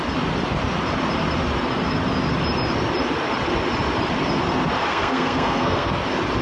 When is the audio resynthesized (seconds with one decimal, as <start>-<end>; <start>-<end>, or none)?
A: 4.8-5.9